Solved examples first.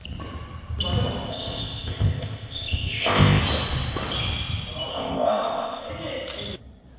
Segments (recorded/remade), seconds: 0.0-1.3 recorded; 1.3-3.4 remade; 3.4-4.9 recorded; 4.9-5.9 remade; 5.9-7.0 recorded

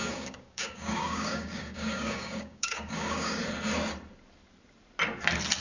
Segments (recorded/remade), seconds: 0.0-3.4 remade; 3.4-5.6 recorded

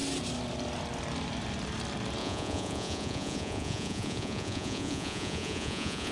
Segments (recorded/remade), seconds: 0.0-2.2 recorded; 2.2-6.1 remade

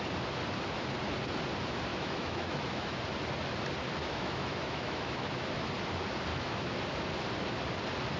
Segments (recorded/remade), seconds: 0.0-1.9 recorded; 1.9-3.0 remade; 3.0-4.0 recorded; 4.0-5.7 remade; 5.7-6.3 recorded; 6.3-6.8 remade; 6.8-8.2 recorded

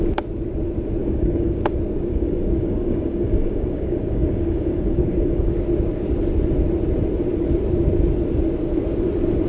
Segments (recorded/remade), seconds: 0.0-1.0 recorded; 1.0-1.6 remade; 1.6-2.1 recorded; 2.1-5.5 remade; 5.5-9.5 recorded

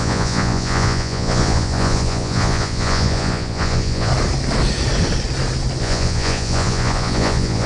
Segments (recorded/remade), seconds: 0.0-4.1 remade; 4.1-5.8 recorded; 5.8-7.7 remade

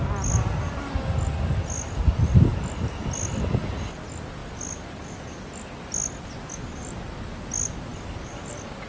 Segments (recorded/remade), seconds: 0.0-8.9 recorded

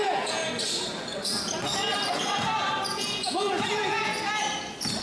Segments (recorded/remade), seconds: 0.0-0.4 remade; 0.4-2.9 recorded; 2.9-4.1 remade; 4.1-5.0 recorded